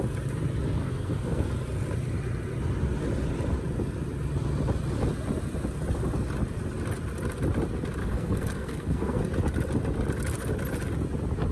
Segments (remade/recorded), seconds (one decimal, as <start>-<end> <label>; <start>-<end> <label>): 0.0-0.8 recorded; 0.8-1.5 remade; 1.5-8.0 recorded; 8.0-9.2 remade; 9.2-11.5 recorded